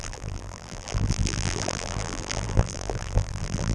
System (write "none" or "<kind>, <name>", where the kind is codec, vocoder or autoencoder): vocoder, BigVGAN v2